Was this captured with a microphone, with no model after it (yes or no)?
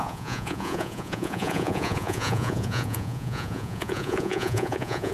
no